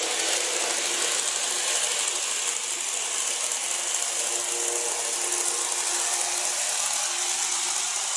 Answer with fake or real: real